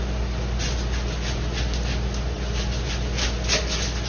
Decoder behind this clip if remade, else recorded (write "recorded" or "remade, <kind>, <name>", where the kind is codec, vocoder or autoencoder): recorded